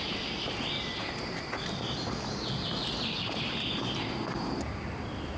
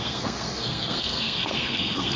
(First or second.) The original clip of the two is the first